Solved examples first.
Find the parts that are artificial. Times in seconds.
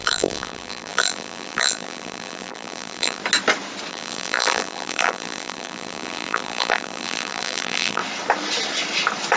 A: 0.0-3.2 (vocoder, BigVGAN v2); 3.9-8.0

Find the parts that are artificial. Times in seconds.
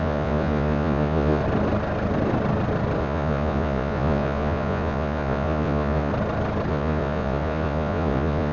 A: 0.0-1.4 (vocoder, Vocos); 3.0-6.1; 6.7-8.5